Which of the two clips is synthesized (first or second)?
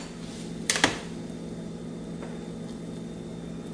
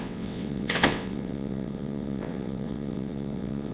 second